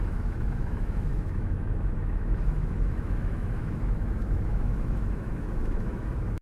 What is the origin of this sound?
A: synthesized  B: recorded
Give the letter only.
A